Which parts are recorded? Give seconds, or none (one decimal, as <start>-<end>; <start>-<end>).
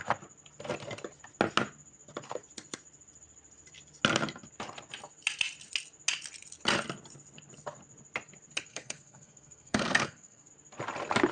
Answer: 0.0-8.7; 10.5-11.3